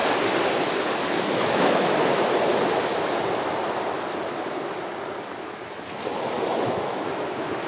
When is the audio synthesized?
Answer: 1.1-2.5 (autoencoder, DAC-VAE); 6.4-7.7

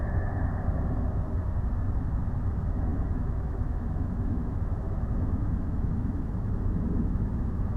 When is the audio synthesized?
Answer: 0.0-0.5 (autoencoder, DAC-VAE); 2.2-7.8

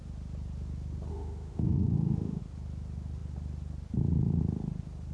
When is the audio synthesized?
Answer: 1.1-2.4 (autoencoder, DAC-VAE)

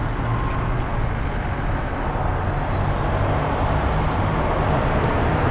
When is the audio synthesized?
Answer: none

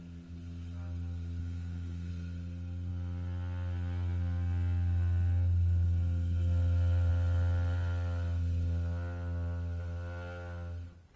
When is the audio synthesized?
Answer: 1.4-2.1 (autoencoder, DAC-VAE)